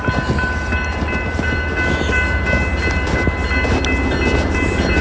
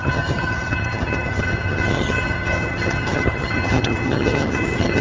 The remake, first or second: second